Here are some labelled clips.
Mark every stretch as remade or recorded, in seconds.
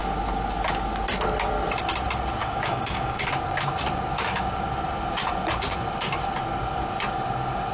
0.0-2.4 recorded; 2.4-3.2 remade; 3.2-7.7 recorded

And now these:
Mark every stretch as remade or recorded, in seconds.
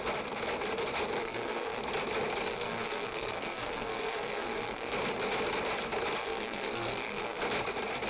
0.0-1.2 recorded; 1.2-1.8 remade; 1.8-2.5 recorded; 2.5-4.9 remade; 4.9-6.2 recorded; 6.2-7.4 remade; 7.4-8.1 recorded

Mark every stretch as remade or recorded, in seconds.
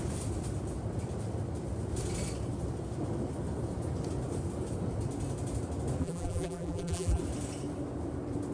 0.0-6.0 recorded; 6.0-7.2 remade; 7.2-8.5 recorded